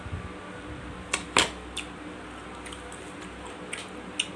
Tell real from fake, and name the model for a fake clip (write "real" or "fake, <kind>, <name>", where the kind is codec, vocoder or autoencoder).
real